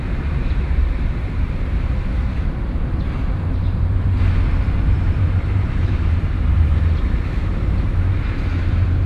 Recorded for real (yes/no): no